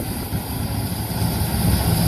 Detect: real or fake real